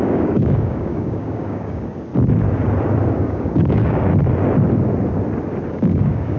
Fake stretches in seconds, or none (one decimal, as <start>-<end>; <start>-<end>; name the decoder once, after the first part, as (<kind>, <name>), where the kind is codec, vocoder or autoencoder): 0.0-2.1 (codec, DAC); 3.1-4.1; 5.7-6.4